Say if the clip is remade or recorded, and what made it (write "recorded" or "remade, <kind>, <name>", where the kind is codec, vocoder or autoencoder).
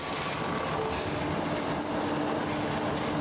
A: recorded